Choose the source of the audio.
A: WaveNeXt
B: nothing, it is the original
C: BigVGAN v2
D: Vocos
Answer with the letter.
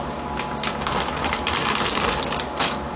B